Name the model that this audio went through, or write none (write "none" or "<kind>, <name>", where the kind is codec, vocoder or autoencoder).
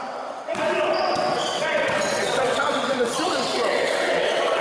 vocoder, WaveNeXt